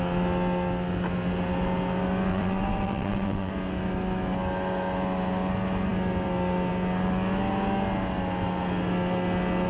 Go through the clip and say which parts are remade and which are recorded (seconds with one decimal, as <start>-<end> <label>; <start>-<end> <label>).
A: 0.0-2.3 recorded; 2.3-3.5 remade; 3.5-9.7 recorded